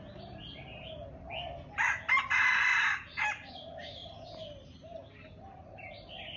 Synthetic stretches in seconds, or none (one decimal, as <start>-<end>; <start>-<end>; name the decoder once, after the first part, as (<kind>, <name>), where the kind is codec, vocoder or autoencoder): none